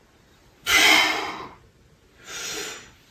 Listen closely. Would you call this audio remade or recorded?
recorded